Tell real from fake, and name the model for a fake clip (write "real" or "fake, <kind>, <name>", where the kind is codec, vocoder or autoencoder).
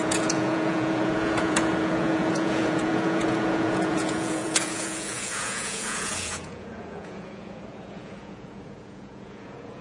fake, vocoder, Vocos